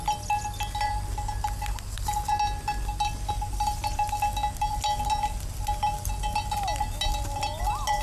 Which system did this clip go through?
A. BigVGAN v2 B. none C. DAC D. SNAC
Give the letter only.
B